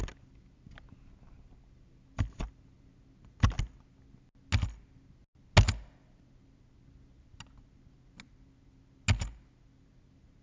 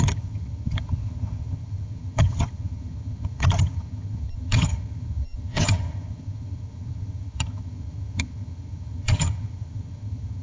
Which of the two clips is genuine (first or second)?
first